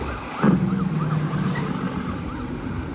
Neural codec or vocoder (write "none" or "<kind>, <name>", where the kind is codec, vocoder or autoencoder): none